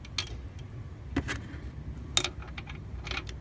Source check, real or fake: real